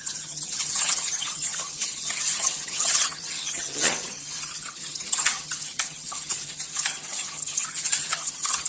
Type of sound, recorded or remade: remade